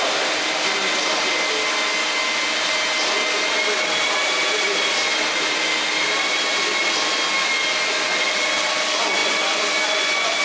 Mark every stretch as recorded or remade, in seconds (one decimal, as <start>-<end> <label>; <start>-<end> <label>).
0.0-9.2 recorded; 9.2-10.4 remade

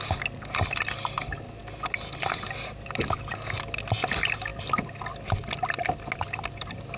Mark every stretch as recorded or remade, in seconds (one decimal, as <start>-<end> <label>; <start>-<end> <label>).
0.0-7.0 recorded

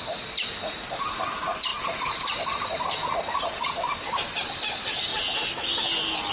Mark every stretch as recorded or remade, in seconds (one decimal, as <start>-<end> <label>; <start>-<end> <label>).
0.0-6.3 recorded

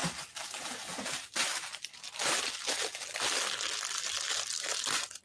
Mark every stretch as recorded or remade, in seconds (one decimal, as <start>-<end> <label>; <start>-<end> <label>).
0.0-5.2 recorded